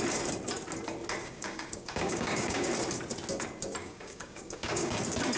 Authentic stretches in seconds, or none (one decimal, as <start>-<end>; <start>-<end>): 0.0-1.2; 2.7-3.8; 5.0-5.4